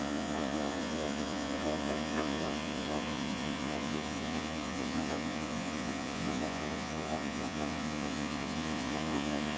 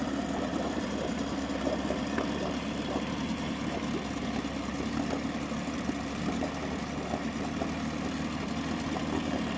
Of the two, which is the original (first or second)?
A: second